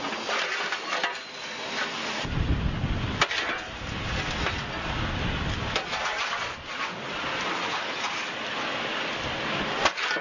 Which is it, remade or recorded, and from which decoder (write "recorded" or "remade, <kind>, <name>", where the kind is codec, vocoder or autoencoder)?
recorded